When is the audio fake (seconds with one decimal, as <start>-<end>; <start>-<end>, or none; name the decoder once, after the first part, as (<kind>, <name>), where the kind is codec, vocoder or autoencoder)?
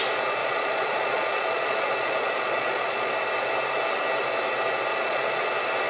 0.4-3.1 (vocoder, Vocos); 4.9-5.5